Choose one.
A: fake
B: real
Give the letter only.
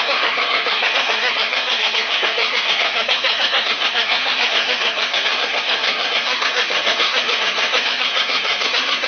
A